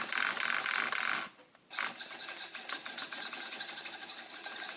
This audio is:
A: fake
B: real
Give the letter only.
B